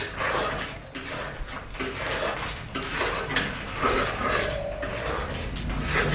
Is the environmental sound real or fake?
real